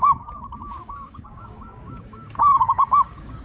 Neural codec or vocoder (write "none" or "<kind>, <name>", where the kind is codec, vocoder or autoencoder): codec, DAC